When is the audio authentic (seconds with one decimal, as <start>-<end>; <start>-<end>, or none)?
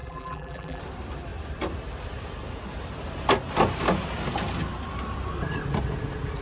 0.8-6.4